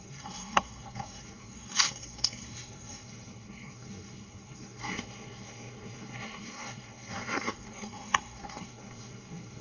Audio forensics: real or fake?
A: fake